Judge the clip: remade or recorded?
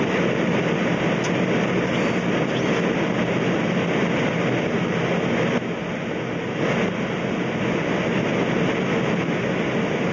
recorded